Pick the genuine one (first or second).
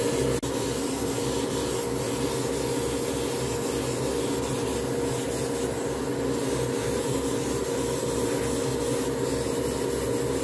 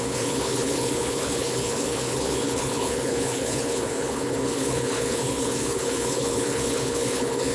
first